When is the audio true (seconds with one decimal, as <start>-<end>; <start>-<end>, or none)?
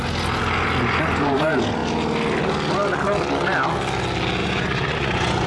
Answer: 0.0-4.4